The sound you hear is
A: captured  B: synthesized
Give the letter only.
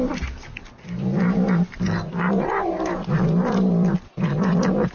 A